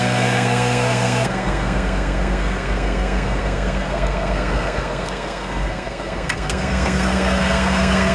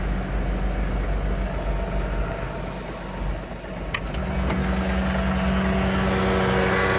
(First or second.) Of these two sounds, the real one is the second